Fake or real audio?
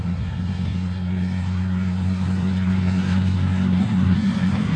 fake